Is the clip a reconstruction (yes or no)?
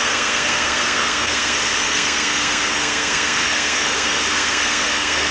yes